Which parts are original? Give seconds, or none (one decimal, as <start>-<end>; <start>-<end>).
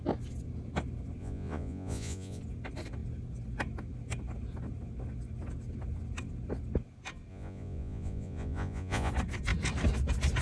0.0-1.2; 2.4-7.3; 9.1-10.4